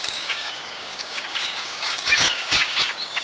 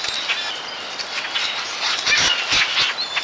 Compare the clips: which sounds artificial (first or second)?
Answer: first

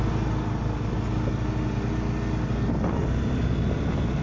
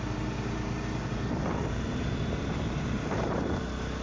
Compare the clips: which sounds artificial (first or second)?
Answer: second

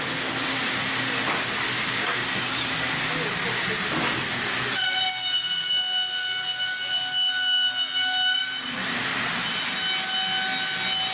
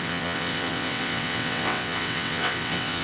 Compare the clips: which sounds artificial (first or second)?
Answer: second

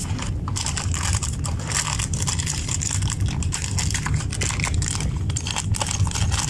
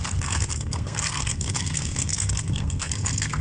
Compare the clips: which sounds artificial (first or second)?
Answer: second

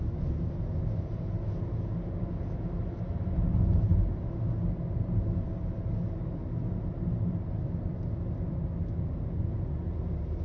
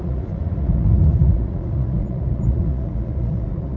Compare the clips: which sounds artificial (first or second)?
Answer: second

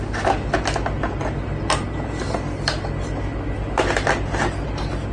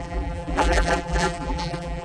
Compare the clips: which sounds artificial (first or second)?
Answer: second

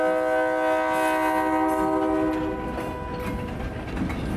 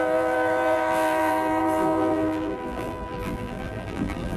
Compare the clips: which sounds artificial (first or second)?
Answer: second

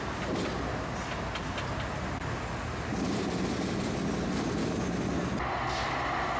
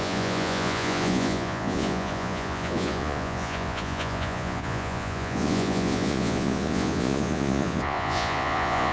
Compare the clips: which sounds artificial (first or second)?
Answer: second